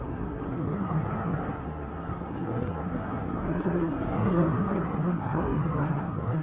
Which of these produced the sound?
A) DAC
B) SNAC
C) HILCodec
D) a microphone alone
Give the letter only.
B